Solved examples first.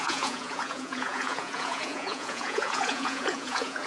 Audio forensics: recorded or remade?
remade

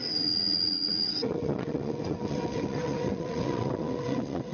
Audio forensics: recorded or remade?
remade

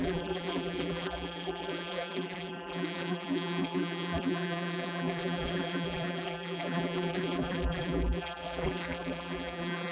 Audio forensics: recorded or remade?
remade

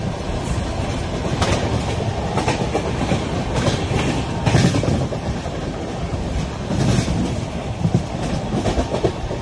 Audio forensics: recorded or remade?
recorded